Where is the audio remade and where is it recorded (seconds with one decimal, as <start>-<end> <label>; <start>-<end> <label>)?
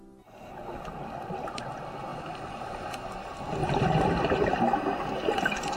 0.0-5.8 recorded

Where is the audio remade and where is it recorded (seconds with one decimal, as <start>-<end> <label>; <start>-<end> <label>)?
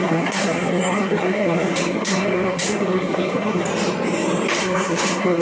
0.0-3.7 remade; 3.7-4.6 recorded; 4.6-5.4 remade